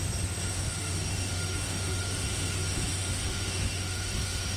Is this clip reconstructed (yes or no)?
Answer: yes